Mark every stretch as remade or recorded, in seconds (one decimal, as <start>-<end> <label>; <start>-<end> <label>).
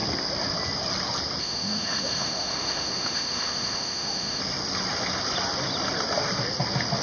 0.0-1.4 recorded; 1.4-4.4 remade; 4.4-7.0 recorded